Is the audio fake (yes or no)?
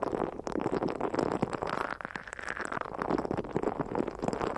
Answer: no